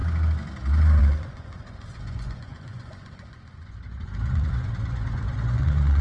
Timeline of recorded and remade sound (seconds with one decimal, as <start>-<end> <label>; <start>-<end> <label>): 0.0-1.0 recorded; 1.0-6.0 remade